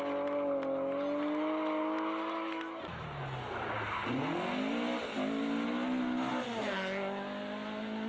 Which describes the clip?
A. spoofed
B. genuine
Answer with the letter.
B